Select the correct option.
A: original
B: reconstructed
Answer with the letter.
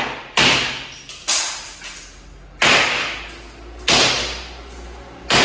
A